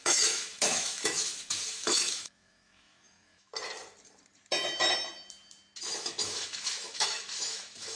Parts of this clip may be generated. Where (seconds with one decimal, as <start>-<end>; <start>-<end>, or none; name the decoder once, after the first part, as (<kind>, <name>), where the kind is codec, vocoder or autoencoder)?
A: 0.0-3.5 (autoencoder, DAC-VAE); 5.8-8.0